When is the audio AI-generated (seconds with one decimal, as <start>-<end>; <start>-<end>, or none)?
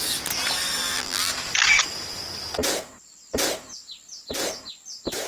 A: 0.8-1.3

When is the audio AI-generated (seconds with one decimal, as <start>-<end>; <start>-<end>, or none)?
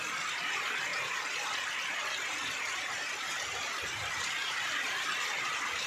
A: 0.9-1.7; 4.4-5.1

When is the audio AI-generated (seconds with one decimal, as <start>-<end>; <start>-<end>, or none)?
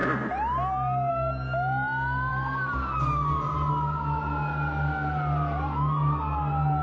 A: none